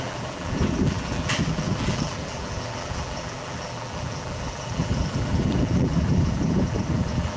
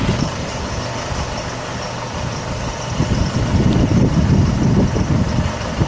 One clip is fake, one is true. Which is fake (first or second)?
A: first